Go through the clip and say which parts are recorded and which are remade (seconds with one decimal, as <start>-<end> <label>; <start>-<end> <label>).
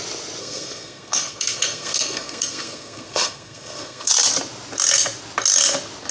0.0-0.4 recorded; 0.4-4.1 remade; 4.1-6.1 recorded